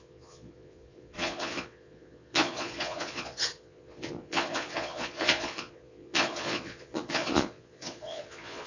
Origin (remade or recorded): remade